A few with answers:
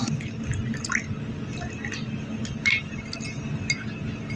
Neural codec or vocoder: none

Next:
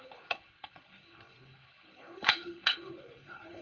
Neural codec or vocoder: codec, HILCodec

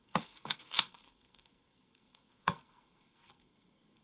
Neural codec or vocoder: codec, SNAC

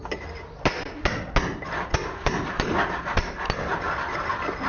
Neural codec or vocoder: none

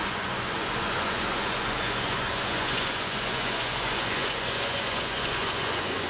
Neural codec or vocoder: vocoder, Vocos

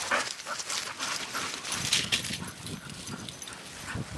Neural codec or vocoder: none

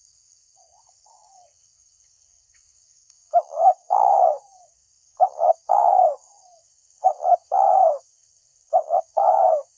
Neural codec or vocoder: codec, SNAC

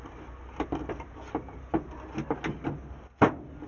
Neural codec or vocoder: none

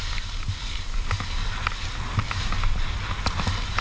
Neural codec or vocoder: none